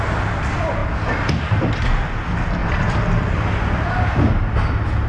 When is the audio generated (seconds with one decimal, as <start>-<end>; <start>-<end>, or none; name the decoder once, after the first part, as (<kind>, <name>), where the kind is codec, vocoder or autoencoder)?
2.6-3.3 (vocoder, BigVGAN v2)